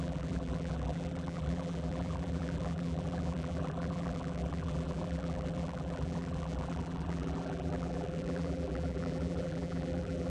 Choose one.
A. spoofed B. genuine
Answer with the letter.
A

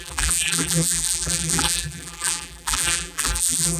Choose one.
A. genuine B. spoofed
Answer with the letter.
B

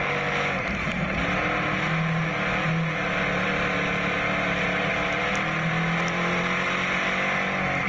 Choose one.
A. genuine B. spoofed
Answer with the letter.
A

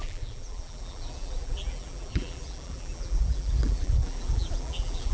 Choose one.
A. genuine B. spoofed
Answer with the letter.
B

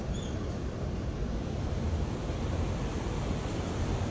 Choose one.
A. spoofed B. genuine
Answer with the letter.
A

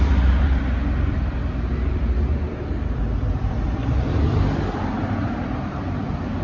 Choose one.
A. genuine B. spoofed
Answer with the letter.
B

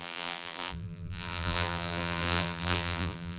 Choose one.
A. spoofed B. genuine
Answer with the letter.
A